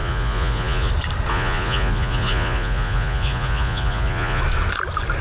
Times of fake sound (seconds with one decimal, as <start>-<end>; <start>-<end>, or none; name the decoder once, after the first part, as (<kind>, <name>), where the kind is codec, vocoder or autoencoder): 0.0-0.9 (vocoder, Vocos); 1.3-4.4